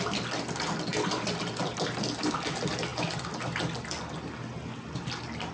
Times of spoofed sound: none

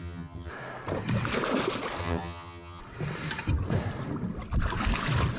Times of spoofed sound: 0.0-0.5 (vocoder, HiFi-GAN); 2.0-2.8

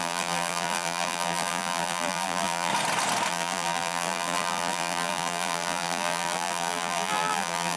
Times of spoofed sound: 0.0-2.7 (vocoder, BigVGAN v2); 3.3-7.8

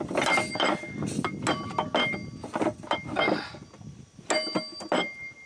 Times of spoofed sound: none

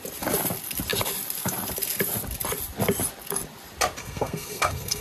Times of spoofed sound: 4.0-5.0 (codec, SNAC)

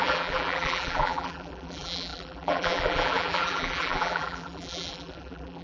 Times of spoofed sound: 0.0-5.6 (vocoder, BigVGAN v2)

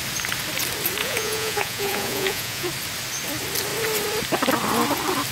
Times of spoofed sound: 1.0-2.7 (vocoder, Vocos)

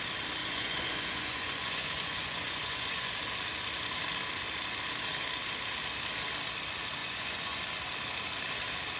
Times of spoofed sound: 0.4-3.1 (vocoder, Vocos); 7.0-7.6